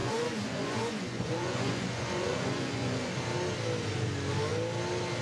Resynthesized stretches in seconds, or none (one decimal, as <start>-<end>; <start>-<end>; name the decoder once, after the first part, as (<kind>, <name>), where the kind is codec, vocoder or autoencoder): 0.0-3.1 (vocoder, Vocos)